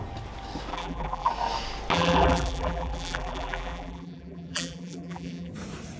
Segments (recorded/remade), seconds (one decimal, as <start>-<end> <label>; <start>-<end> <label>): 0.0-0.7 recorded; 0.7-1.3 remade; 1.3-1.9 recorded; 1.9-5.5 remade; 5.5-6.0 recorded